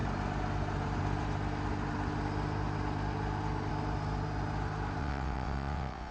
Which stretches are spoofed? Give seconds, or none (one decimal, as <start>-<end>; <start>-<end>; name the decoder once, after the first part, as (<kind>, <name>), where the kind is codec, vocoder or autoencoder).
5.0-6.1 (vocoder, WaveNeXt)